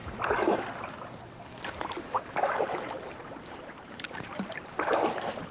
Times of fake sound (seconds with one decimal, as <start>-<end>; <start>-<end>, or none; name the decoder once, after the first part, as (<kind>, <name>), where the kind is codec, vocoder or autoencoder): 1.6-5.5 (vocoder, BigVGAN v2)